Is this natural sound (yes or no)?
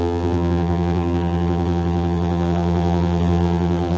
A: no